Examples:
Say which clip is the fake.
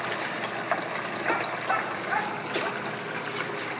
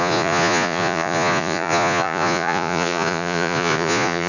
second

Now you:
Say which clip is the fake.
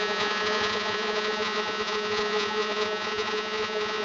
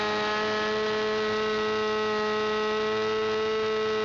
first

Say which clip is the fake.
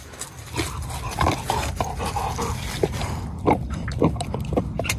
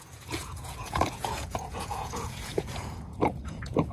second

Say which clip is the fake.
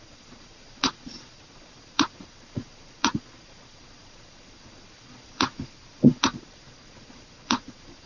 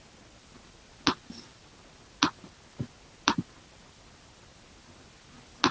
first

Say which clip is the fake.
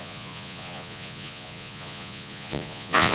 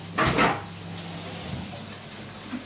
first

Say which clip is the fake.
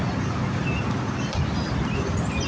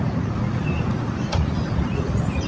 second